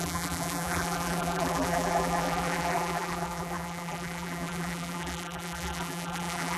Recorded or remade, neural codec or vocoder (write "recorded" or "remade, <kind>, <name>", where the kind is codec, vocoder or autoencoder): remade, vocoder, BigVGAN v2